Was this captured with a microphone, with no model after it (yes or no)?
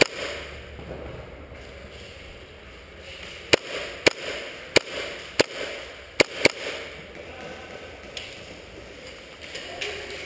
yes